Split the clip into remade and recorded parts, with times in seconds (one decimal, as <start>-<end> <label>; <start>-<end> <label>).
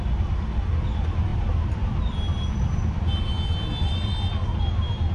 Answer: 0.0-1.3 recorded; 1.3-4.1 remade; 4.1-5.1 recorded